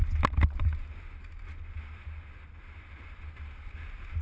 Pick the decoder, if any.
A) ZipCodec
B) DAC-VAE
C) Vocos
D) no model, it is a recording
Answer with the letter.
D